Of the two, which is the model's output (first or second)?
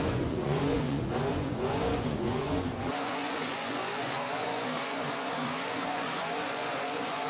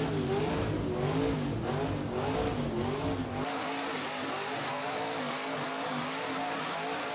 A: first